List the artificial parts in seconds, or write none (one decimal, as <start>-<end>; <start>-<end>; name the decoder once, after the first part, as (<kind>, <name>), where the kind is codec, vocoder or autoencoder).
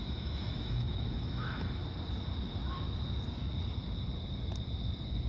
0.0-1.8 (autoencoder, DAC-VAE)